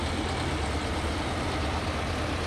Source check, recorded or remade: recorded